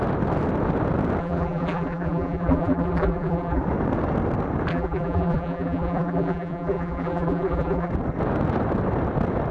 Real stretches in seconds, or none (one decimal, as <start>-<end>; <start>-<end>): 0.0-1.2; 3.6-4.7; 7.9-9.5